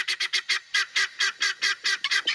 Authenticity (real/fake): real